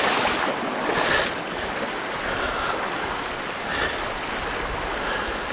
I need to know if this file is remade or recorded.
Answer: recorded